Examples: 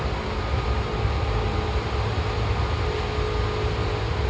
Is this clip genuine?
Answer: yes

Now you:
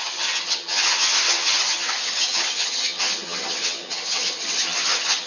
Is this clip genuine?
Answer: no